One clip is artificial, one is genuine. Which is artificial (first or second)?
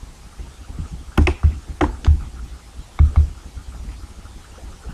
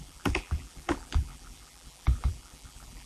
second